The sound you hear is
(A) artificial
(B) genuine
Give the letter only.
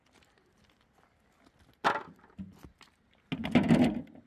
B